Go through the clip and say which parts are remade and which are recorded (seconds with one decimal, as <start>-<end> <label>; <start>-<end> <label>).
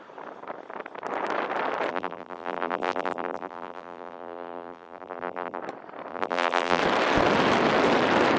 0.0-1.9 recorded; 1.9-5.6 remade; 5.6-6.1 recorded; 6.1-6.8 remade; 6.8-8.4 recorded